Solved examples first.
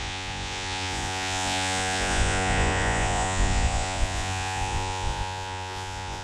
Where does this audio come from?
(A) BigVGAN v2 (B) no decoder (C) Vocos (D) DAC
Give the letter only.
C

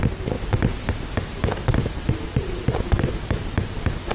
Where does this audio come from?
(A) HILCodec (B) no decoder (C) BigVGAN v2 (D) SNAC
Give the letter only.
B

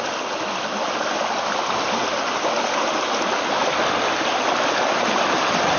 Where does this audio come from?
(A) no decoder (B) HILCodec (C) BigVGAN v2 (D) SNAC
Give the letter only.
A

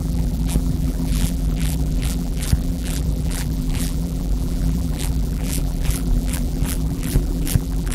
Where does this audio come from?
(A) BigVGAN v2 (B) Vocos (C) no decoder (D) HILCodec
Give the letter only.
A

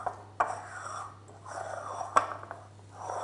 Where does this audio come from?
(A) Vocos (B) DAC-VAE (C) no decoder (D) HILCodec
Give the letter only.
C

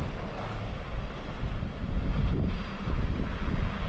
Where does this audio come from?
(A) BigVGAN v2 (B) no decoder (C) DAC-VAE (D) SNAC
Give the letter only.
B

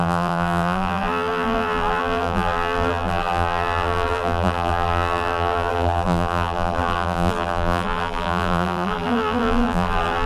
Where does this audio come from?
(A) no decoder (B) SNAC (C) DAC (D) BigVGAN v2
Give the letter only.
D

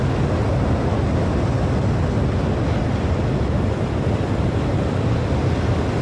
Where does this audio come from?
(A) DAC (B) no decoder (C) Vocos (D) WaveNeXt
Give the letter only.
B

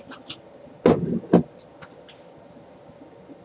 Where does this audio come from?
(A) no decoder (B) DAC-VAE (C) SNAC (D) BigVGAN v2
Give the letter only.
A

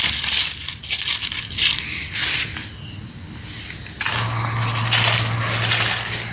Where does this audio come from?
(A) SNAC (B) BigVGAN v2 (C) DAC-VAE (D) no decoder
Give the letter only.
D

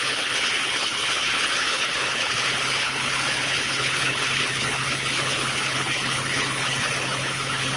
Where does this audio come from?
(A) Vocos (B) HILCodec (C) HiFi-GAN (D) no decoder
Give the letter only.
B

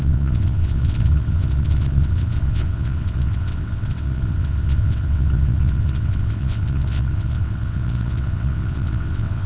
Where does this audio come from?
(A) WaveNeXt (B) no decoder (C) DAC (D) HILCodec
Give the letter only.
A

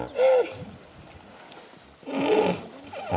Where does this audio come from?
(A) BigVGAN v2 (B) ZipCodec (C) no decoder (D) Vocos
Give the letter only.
C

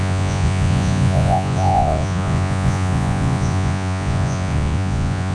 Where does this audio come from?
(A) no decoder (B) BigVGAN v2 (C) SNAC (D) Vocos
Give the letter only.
D